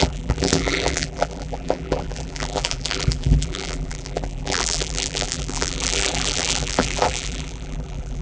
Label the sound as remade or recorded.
remade